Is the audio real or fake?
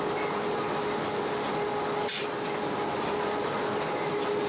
real